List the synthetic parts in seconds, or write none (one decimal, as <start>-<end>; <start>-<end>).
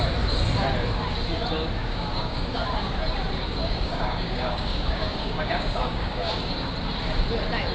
1.8-2.5; 3.6-6.3